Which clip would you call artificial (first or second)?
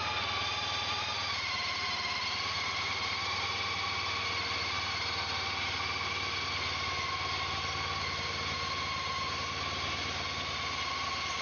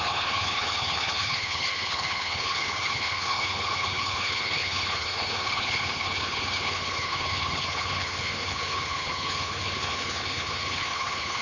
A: second